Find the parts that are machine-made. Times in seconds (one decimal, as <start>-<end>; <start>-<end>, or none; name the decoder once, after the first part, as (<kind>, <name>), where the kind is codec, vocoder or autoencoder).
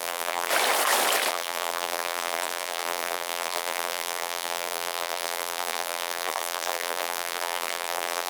0.0-0.5 (vocoder, BigVGAN v2); 1.3-8.3